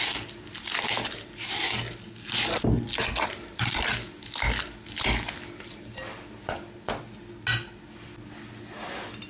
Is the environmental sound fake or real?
real